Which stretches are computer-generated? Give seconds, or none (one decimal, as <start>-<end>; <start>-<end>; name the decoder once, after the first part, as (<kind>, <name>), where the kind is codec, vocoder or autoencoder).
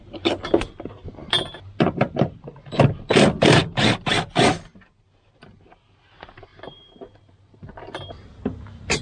1.2-2.6 (vocoder, BigVGAN v2); 6.5-9.0